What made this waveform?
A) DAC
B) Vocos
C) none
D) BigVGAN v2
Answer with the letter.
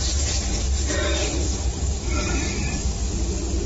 C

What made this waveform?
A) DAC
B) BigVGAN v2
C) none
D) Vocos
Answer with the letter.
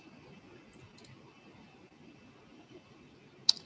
C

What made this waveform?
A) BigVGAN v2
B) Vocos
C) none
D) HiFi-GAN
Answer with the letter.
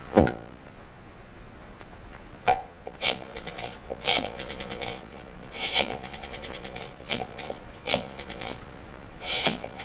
B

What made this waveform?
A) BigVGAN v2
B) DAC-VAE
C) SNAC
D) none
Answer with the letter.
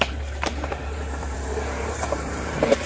A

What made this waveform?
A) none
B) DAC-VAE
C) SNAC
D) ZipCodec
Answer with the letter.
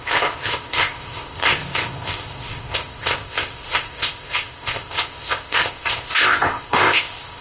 D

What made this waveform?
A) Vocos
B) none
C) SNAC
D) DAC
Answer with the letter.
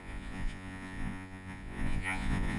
A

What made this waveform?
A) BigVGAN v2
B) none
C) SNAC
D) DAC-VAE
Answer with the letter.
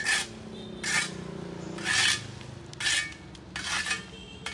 B